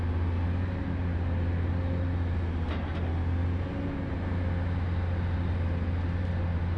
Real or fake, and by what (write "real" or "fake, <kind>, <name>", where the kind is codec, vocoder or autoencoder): real